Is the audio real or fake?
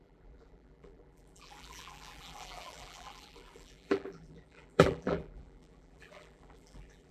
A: fake